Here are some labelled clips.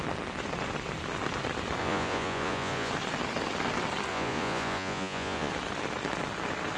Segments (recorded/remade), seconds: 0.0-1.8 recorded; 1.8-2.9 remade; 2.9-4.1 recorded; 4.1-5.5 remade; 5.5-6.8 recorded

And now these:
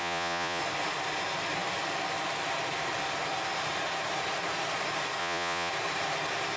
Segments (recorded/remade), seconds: 0.0-0.6 remade; 0.6-5.2 recorded; 5.2-5.7 remade; 5.7-6.6 recorded